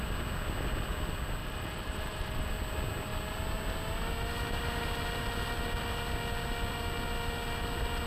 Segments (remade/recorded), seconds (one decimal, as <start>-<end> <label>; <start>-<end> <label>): 0.0-1.4 recorded; 1.4-2.5 remade; 2.5-8.1 recorded